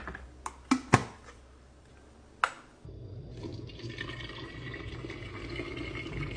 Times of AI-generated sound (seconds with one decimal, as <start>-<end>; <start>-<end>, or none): 1.0-1.9